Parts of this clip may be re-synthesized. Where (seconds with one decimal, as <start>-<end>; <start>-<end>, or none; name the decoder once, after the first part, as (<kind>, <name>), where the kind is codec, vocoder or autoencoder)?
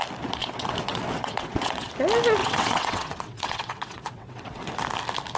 0.4-1.9 (vocoder, WaveNeXt); 2.4-4.7